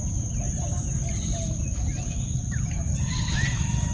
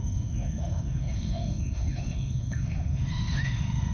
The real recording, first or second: first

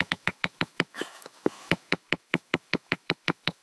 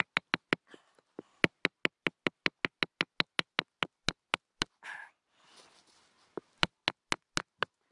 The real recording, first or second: second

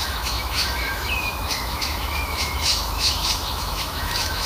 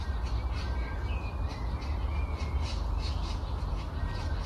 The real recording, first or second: second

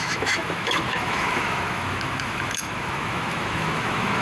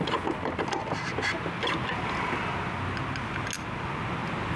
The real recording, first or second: second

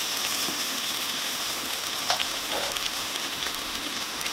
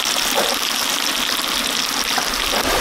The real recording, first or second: second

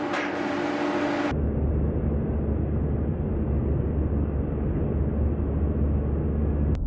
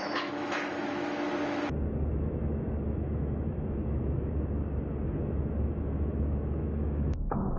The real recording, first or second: first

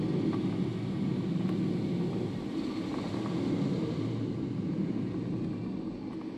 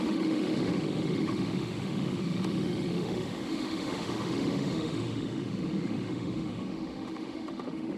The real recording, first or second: first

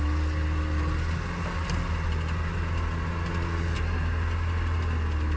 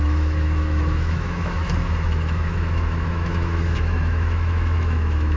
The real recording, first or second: first